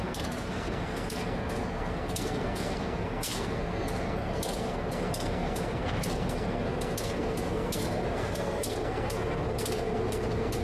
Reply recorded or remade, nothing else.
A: remade